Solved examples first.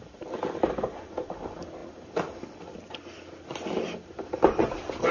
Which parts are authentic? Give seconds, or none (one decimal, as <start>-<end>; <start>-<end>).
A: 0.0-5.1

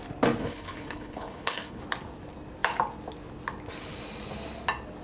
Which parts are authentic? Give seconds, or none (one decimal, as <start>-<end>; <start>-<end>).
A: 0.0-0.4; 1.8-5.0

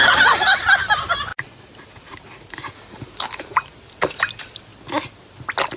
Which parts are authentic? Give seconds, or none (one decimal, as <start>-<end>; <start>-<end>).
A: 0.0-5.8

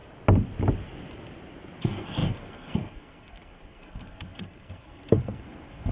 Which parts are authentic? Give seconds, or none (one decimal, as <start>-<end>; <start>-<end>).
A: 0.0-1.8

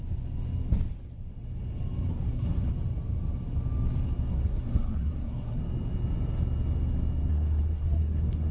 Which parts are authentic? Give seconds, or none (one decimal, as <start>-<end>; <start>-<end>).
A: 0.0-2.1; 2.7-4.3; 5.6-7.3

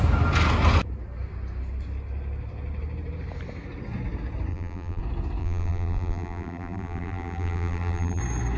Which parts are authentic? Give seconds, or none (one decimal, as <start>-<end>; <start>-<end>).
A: 0.0-4.5; 5.0-5.4; 8.2-8.6

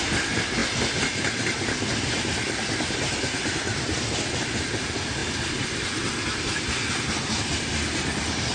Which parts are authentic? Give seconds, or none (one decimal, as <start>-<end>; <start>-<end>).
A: 0.0-8.5